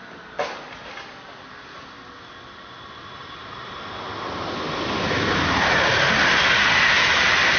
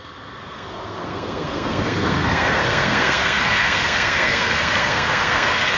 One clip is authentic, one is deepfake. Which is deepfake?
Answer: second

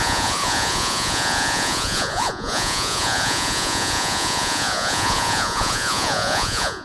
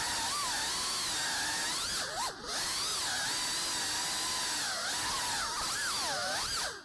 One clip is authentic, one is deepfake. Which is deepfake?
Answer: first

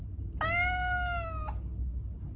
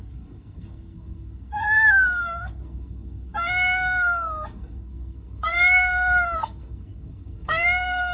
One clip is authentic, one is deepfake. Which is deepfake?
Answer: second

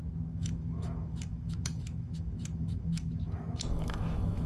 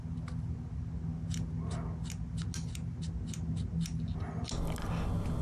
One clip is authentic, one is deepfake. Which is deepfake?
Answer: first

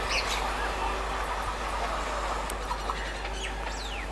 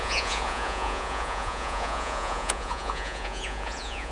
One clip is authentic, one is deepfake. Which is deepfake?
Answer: second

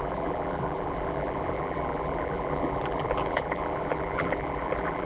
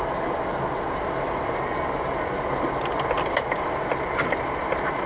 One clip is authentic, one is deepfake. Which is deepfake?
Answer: first